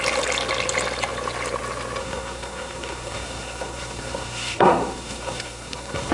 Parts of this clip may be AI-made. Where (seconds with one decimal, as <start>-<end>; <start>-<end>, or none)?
2.0-6.1